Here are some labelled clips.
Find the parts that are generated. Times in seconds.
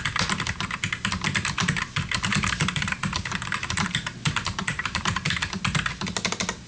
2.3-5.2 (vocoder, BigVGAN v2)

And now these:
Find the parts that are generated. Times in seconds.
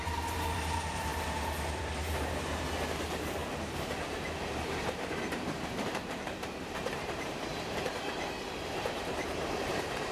0.0-1.1 (vocoder, BigVGAN v2); 1.8-10.1